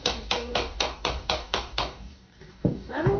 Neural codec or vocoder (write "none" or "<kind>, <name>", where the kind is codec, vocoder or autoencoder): codec, DAC